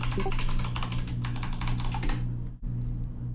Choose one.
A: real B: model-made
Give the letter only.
A